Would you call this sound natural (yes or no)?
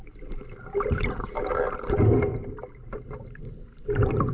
yes